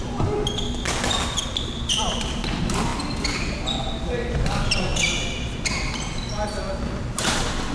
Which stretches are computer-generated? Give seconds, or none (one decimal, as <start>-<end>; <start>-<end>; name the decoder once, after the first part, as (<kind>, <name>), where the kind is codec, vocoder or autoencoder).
none